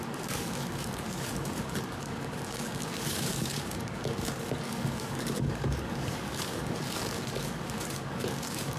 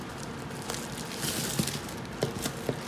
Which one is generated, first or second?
first